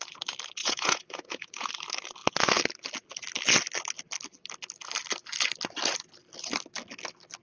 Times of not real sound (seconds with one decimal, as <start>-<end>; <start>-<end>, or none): 0.6-1.7